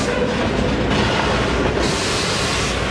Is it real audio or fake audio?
real